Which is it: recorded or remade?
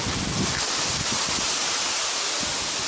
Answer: recorded